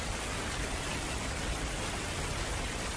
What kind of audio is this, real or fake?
real